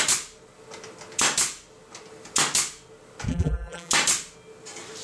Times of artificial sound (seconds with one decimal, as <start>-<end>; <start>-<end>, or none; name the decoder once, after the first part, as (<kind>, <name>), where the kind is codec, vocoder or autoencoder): 3.3-3.9 (vocoder, BigVGAN v2)